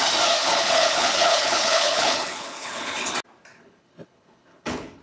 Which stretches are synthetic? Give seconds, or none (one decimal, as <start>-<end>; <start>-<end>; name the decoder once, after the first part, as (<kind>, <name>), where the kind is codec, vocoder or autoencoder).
0.4-3.1 (codec, HILCodec); 3.5-5.0

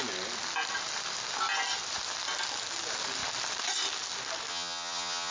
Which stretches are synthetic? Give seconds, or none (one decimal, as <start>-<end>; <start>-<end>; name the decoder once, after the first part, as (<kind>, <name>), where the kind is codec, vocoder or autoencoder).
4.5-5.3 (vocoder, HiFi-GAN)

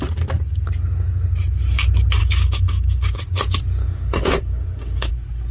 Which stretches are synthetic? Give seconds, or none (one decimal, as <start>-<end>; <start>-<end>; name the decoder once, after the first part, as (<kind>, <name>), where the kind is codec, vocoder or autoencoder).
2.2-3.2 (codec, DAC); 3.8-5.1

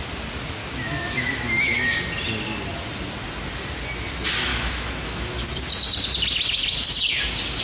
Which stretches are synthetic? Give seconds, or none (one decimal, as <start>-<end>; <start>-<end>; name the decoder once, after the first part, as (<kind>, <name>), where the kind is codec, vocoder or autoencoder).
0.6-2.0 (autoencoder, DAC-VAE); 4.5-5.6

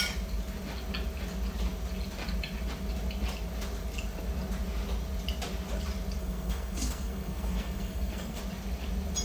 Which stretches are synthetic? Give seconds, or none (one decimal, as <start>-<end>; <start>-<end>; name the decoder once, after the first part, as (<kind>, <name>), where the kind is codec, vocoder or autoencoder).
6.2-8.4 (codec, SNAC)

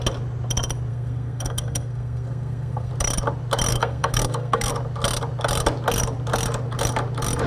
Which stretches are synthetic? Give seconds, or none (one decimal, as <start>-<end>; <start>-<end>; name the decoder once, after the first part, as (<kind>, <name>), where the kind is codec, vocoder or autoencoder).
0.9-2.9 (codec, SNAC); 3.7-4.7

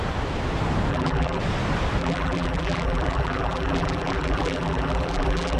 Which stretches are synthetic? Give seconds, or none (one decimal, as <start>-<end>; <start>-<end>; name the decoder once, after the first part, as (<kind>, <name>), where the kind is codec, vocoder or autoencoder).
0.9-1.4 (vocoder, BigVGAN v2); 2.0-5.6